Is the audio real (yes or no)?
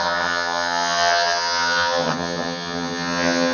no